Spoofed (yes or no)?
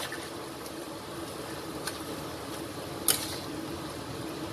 no